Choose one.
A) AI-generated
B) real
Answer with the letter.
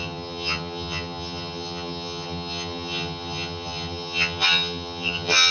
A